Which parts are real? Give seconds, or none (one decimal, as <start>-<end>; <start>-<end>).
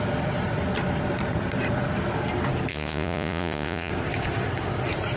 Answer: 0.0-2.7; 3.9-5.2